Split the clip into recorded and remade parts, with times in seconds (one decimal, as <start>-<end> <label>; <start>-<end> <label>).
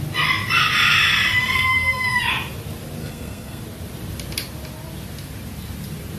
0.0-1.4 recorded; 1.4-2.2 remade; 2.2-3.0 recorded; 3.0-3.6 remade; 3.6-6.2 recorded